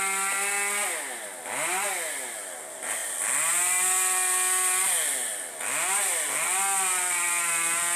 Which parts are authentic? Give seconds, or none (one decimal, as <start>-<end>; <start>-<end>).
0.0-8.0